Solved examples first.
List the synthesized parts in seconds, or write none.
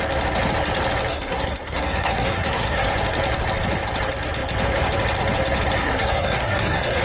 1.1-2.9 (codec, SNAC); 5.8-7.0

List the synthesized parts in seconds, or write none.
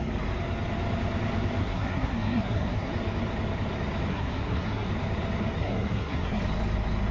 1.6-2.9 (codec, SNAC); 4.1-4.9; 5.6-6.4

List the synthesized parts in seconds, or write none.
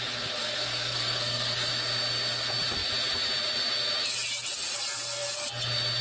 0.4-1.7 (codec, SNAC)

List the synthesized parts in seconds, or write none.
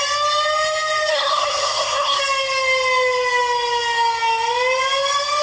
1.1-2.2 (codec, SNAC)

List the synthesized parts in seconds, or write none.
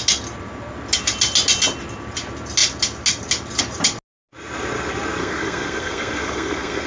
5.2-6.9 (codec, SNAC)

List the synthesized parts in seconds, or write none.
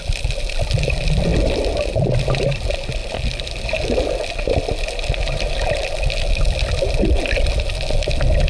none